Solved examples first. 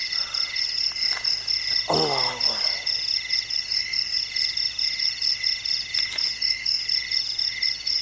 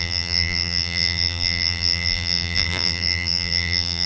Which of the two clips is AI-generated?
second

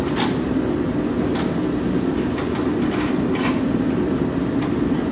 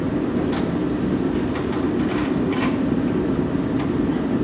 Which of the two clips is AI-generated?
second